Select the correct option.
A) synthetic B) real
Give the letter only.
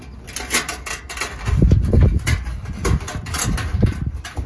B